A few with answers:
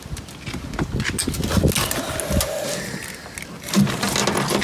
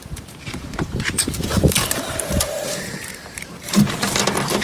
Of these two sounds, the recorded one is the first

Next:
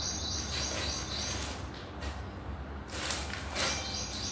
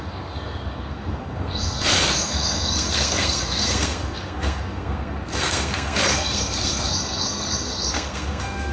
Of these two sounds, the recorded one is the first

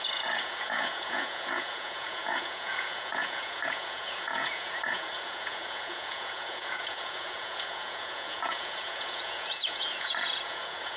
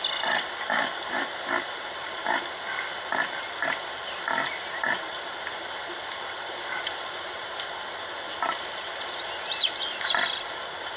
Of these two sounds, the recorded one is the second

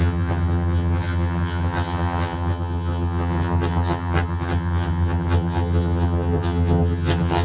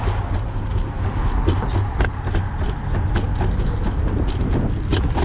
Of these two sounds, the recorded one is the second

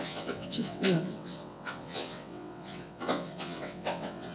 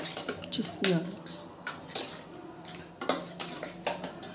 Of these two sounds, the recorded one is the second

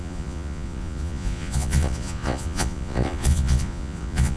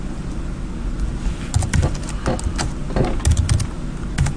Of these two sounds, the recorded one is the second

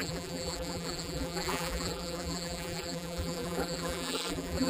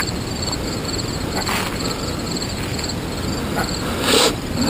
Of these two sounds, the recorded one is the second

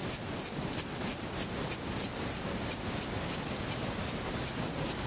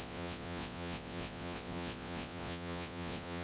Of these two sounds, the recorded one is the first